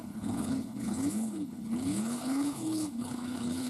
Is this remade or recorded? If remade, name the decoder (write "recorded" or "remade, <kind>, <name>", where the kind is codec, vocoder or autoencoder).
remade, codec, HILCodec